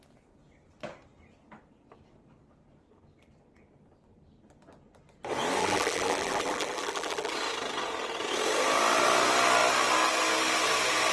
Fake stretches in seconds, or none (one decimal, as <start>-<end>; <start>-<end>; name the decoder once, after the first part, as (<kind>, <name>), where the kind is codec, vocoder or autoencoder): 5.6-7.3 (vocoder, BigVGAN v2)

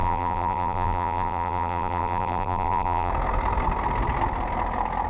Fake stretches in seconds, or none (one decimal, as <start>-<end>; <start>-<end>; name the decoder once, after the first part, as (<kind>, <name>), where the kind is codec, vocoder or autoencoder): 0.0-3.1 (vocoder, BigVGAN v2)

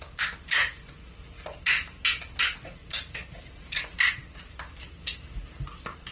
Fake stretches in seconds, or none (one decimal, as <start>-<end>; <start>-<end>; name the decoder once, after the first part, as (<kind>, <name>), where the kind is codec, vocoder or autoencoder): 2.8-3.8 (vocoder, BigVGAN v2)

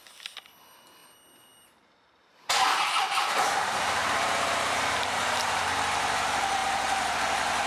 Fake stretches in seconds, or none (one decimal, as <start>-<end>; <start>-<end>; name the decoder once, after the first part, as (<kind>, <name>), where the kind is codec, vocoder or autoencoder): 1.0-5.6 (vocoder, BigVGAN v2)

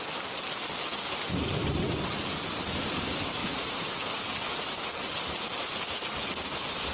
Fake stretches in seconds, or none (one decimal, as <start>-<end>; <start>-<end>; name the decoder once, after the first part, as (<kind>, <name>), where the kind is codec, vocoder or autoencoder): 3.4-4.1 (vocoder, BigVGAN v2)